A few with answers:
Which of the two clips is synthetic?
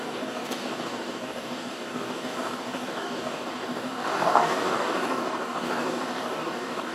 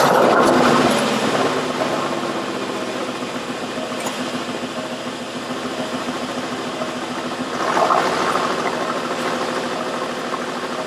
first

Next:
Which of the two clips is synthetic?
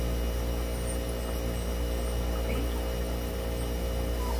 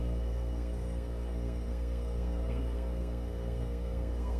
second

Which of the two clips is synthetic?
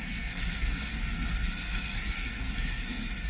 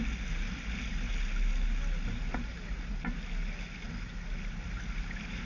first